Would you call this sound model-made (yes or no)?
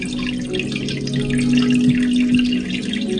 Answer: no